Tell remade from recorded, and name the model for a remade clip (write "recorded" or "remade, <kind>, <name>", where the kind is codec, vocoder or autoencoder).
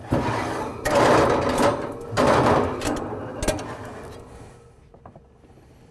recorded